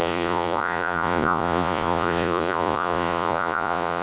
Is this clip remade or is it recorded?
remade